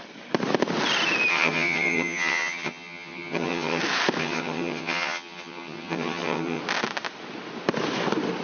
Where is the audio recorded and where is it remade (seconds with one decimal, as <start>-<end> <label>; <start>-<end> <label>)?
0.0-1.3 recorded; 1.3-3.8 remade; 3.8-4.2 recorded; 4.2-6.6 remade; 6.6-8.4 recorded